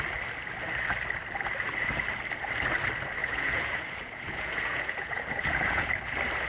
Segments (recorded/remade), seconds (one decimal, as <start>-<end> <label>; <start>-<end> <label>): 0.0-3.2 recorded; 3.2-5.9 remade; 5.9-6.5 recorded